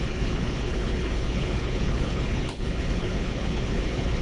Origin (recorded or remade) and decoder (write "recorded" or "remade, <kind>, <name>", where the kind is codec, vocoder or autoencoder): remade, codec, HILCodec